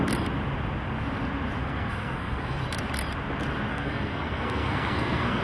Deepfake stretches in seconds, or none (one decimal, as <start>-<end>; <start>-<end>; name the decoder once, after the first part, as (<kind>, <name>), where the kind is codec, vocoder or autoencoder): 1.6-2.6 (codec, SNAC); 3.7-5.4